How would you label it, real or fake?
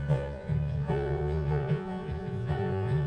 fake